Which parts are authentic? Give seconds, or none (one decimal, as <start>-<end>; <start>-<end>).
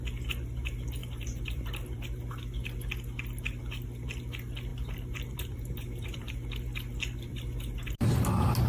0.0-1.0; 2.2-4.7; 6.3-8.7